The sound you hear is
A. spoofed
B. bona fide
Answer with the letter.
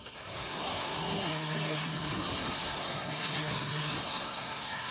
A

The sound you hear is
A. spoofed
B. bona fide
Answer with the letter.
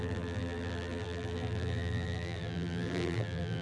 A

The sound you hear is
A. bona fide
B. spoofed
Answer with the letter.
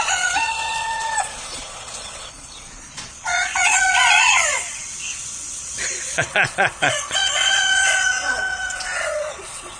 B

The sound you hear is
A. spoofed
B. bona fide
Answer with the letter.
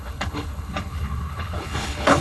A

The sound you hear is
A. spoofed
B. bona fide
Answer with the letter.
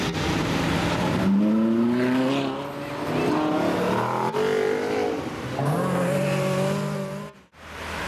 B